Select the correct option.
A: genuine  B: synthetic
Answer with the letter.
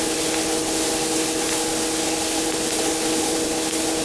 B